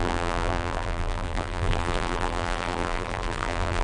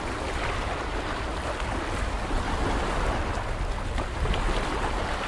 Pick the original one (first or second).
second